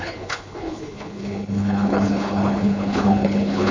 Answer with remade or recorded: remade